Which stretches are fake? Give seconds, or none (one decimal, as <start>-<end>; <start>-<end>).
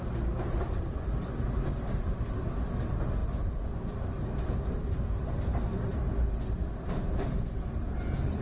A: 3.2-5.6